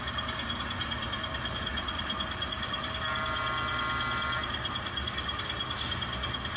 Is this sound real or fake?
real